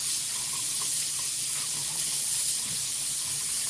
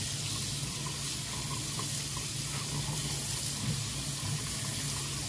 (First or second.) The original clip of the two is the second